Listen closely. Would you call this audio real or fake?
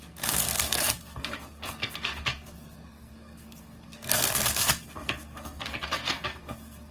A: fake